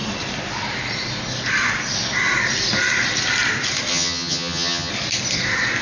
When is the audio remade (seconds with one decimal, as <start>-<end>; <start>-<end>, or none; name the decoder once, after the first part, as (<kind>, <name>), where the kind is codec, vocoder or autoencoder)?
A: 3.9-4.9 (vocoder, HiFi-GAN)